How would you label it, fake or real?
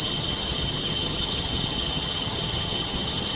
fake